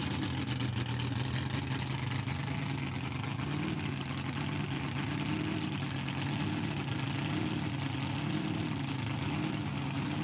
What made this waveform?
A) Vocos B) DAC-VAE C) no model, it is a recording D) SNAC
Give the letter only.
C